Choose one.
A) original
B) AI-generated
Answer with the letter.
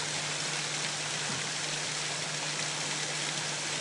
A